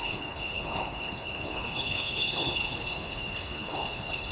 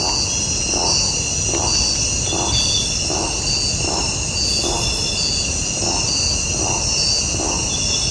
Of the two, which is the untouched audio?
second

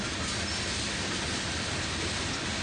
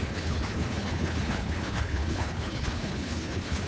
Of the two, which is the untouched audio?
first